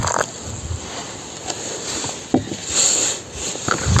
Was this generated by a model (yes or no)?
no